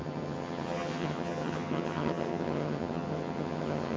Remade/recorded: remade